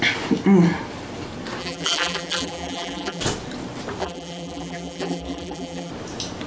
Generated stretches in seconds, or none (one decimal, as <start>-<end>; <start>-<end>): 1.6-3.2; 4.0-5.9